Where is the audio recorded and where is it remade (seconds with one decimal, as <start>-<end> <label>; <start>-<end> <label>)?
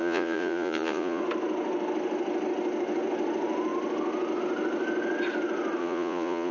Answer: 0.0-1.2 remade; 1.2-5.8 recorded; 5.8-6.5 remade